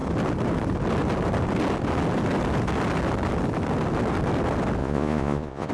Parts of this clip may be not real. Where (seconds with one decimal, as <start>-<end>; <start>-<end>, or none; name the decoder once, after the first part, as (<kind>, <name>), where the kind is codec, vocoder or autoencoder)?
4.8-5.7 (vocoder, Vocos)